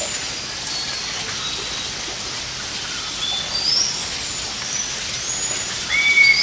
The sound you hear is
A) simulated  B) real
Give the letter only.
B